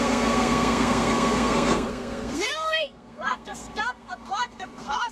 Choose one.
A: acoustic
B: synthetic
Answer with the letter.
B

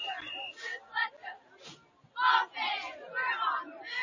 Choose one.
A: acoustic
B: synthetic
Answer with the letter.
A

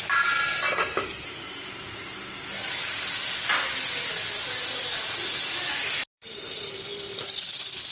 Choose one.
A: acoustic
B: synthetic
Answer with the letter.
A